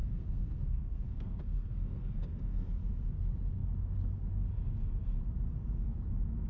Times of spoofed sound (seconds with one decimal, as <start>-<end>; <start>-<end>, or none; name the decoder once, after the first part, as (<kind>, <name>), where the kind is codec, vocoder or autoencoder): 0.0-2.7 (codec, SNAC)